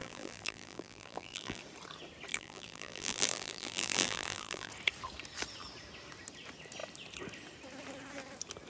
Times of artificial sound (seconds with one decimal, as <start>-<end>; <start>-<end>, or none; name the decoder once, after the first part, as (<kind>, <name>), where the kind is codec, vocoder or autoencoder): 0.0-1.6 (vocoder, BigVGAN v2); 2.3-4.7